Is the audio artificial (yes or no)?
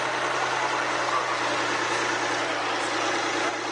no